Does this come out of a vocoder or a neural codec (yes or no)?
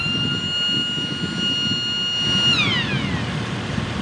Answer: no